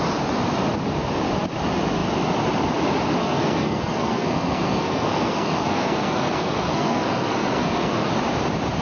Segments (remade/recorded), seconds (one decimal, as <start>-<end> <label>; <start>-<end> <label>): 0.0-3.2 recorded; 3.2-8.1 remade; 8.1-8.8 recorded